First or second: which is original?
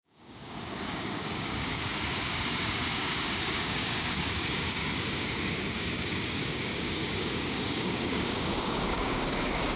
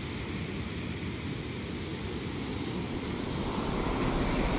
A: second